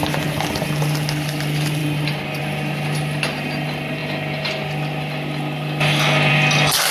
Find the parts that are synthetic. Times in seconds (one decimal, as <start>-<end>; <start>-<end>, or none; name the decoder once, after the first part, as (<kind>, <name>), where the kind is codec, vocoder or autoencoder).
none